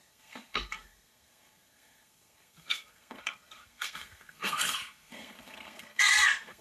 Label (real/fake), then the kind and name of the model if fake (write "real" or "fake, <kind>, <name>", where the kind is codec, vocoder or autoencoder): fake, codec, SNAC